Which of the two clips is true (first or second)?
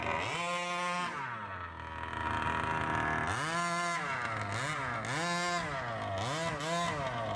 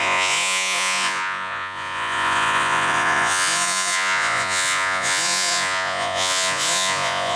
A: first